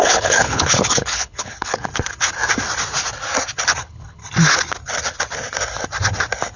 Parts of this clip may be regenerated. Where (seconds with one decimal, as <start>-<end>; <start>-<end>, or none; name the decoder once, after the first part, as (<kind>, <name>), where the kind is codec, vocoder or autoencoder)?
0.0-1.9 (codec, HILCodec); 3.8-4.2

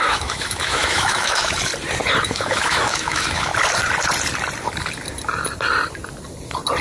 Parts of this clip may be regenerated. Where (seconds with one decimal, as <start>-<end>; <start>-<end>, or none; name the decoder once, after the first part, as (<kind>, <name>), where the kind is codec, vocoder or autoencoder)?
0.0-1.7 (autoencoder, DAC-VAE); 2.2-3.5

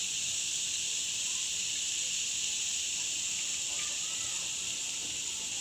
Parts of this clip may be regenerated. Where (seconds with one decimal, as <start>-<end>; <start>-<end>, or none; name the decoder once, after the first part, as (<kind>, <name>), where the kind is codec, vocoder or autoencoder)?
none

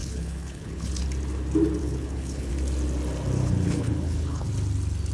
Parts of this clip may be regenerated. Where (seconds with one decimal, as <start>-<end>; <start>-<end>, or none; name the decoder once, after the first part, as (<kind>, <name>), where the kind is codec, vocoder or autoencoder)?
0.0-1.0 (codec, HILCodec); 1.8-2.5; 3.4-4.5